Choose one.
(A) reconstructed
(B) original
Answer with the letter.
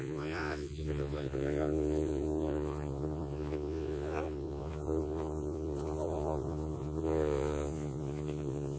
A